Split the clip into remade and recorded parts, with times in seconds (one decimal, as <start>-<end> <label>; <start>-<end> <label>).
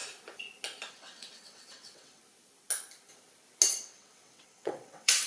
0.0-0.9 recorded; 0.9-2.2 remade; 2.2-3.7 recorded; 3.7-5.3 remade